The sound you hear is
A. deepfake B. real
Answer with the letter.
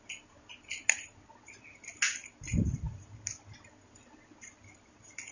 B